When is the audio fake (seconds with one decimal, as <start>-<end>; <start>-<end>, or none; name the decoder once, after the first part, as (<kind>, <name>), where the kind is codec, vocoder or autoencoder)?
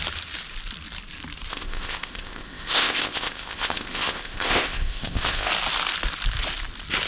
1.5-5.5 (codec, ZipCodec)